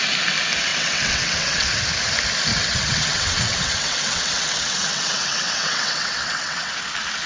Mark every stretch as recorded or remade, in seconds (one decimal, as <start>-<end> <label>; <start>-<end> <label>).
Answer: 0.0-0.7 recorded; 0.7-1.8 remade; 1.8-2.5 recorded; 2.5-6.7 remade; 6.7-7.3 recorded